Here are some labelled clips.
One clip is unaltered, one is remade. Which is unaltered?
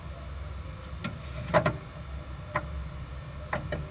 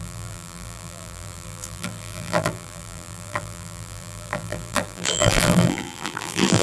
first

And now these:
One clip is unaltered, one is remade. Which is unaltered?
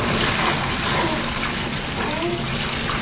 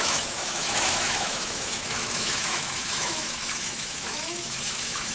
first